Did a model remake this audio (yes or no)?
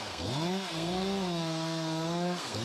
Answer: yes